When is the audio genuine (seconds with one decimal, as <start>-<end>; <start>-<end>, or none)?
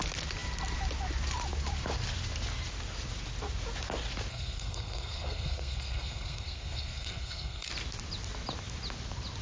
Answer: 0.0-4.3; 7.7-9.4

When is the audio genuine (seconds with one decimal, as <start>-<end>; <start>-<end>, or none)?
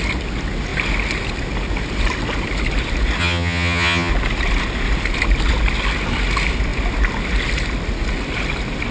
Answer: 0.0-3.2; 4.1-8.9